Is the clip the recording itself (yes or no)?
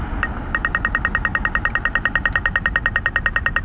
yes